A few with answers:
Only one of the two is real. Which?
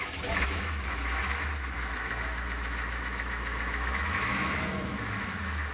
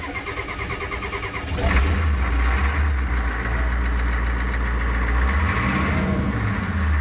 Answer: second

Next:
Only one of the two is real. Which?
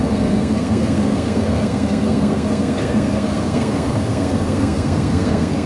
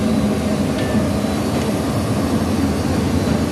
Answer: second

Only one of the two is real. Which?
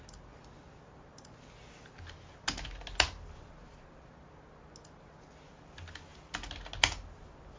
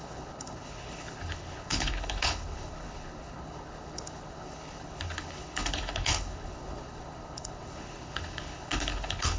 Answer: first